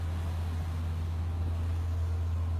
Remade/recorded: recorded